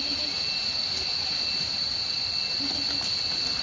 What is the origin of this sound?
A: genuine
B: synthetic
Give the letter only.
A